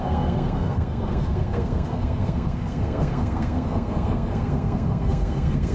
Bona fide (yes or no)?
no